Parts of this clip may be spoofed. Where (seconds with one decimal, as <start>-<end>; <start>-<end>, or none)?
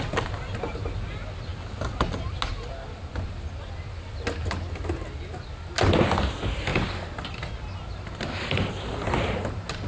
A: none